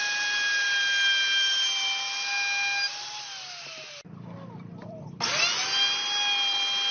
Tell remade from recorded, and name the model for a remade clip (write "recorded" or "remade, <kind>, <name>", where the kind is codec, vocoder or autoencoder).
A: recorded